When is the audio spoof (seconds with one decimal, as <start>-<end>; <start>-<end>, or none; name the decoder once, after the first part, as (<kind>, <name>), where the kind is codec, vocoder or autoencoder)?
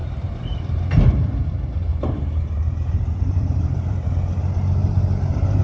0.0-1.4 (vocoder, BigVGAN v2); 1.9-4.1; 4.8-5.6